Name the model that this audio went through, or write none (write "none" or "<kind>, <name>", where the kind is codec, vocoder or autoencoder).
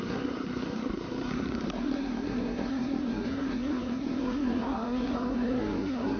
codec, SNAC